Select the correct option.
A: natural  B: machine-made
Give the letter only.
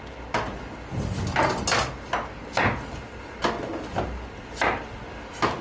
A